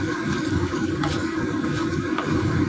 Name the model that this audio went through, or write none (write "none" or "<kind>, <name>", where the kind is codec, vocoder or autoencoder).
codec, DAC